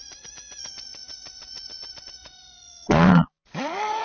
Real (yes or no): no